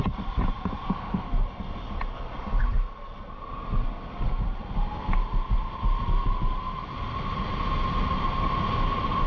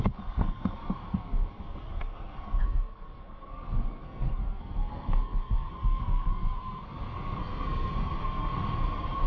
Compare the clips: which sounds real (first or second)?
first